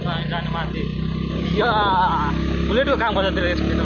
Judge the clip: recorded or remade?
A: recorded